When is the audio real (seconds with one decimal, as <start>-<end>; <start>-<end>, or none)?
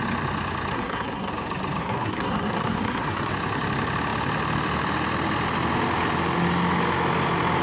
0.0-0.7; 1.3-1.8; 3.3-7.6